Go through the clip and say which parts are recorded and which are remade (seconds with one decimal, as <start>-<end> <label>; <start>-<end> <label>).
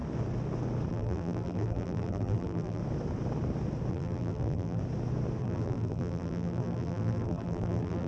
0.0-0.9 recorded; 0.9-2.8 remade; 2.8-3.9 recorded; 3.9-4.8 remade; 4.8-5.4 recorded; 5.4-8.1 remade